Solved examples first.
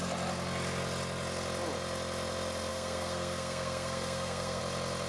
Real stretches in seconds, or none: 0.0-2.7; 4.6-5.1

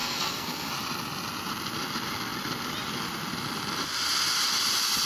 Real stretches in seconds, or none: 0.7-5.1

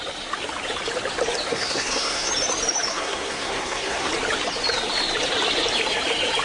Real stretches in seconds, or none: 0.0-1.5; 2.3-2.9; 4.1-6.4

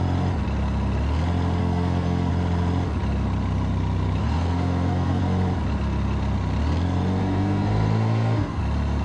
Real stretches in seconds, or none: 0.0-1.6; 2.3-4.2; 5.2-7.2; 8.6-9.0

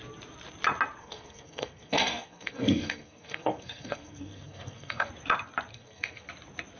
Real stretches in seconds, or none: 0.0-1.0; 5.1-5.7; 6.3-6.8

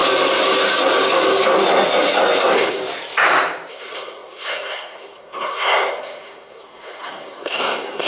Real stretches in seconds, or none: 0.0-2.4; 2.8-3.7

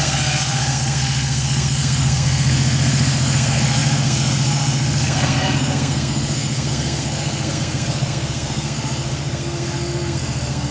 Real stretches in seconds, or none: none